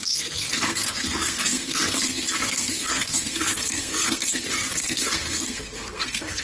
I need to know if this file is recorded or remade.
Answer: remade